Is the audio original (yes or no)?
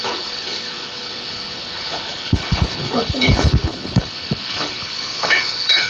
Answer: no